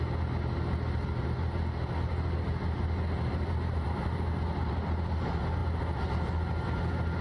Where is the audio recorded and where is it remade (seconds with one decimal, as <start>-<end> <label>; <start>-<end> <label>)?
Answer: 0.0-7.2 recorded